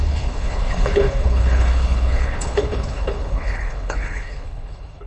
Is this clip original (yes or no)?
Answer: no